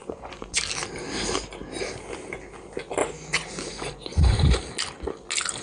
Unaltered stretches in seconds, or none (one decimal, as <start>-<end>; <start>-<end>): 0.6-3.0; 4.6-5.6